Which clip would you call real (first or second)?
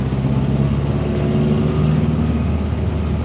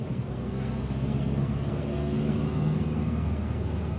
first